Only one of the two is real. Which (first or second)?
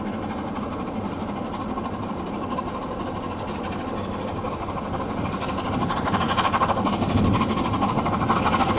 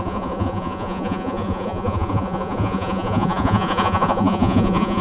first